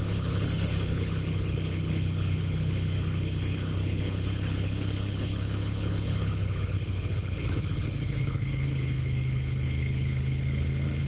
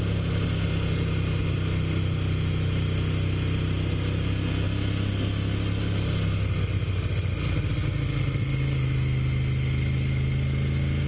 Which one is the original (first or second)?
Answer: second